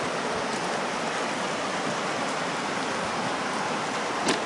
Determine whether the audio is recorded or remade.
recorded